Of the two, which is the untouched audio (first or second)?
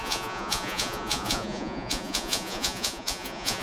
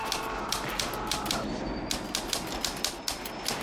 second